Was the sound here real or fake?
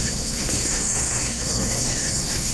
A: fake